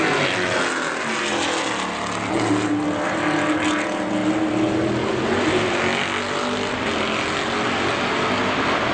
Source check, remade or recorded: recorded